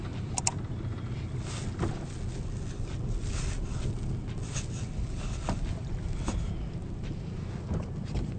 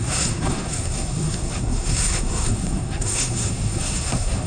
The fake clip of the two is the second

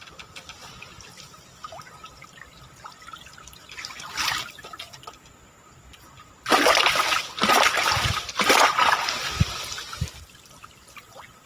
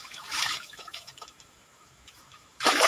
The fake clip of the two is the second